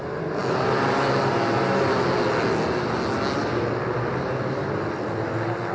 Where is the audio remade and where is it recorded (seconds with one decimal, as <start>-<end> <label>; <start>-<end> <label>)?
0.0-5.7 recorded